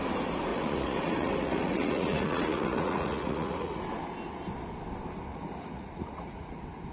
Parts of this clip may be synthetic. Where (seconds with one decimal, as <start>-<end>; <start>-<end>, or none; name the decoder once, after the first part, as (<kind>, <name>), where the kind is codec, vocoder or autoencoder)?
0.5-3.8 (vocoder, Vocos); 5.3-6.5